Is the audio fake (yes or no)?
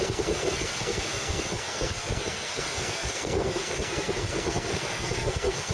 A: yes